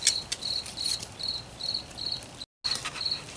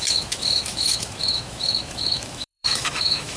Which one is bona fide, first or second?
first